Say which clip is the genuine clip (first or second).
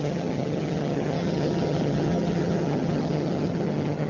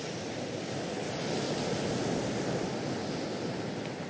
second